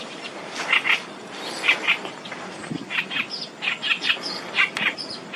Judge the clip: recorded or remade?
recorded